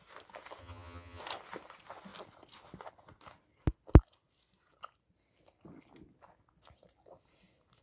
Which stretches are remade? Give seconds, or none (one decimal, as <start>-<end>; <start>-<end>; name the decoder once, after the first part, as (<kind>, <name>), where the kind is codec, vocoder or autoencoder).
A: 0.6-1.2 (vocoder, HiFi-GAN)